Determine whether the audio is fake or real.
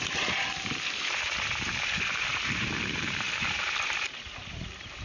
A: fake